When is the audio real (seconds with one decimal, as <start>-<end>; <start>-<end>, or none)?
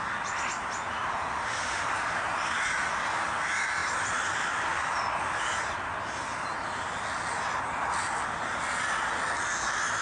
0.0-1.3; 1.9-10.0